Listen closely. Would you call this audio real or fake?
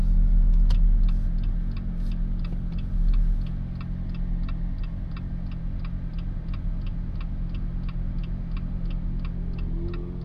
real